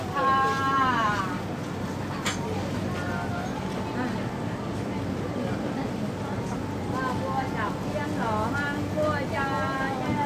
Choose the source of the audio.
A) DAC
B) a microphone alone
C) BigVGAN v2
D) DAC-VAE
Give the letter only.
B